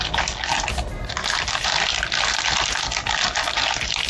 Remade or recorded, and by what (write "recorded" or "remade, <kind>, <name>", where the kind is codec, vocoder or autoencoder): recorded